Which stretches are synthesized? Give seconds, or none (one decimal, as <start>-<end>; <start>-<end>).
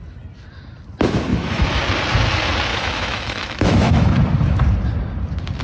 1.3-1.8; 2.7-4.1